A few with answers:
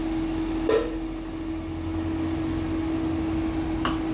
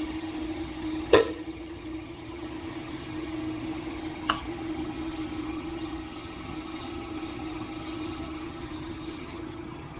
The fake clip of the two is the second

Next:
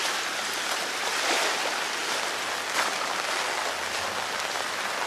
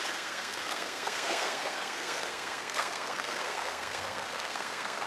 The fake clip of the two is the second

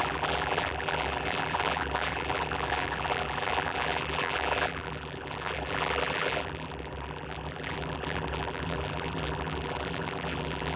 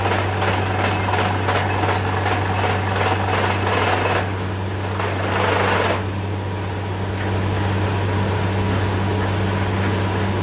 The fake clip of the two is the first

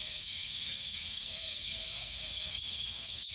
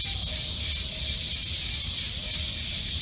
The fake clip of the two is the first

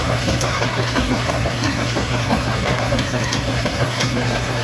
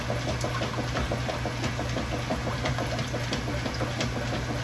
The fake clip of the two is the first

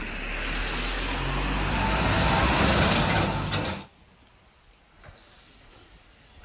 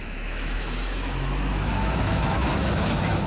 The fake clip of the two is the second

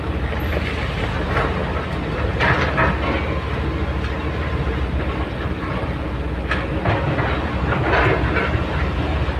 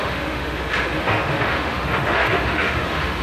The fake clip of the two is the second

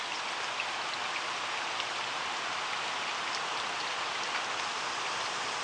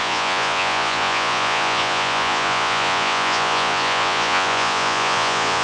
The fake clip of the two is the second